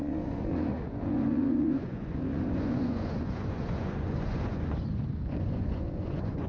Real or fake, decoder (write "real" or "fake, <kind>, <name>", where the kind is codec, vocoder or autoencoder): fake, vocoder, Vocos